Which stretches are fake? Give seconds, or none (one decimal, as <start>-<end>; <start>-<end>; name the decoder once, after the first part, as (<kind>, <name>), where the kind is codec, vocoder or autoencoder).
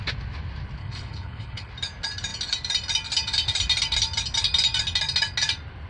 0.8-1.7 (codec, HILCodec)